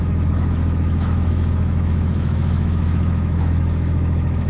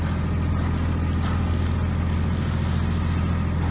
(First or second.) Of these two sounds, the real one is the second